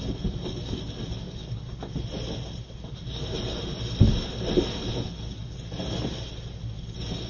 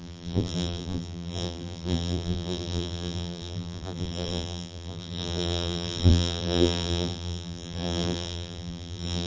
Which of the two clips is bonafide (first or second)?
first